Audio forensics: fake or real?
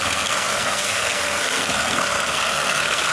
fake